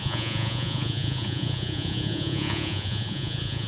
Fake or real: fake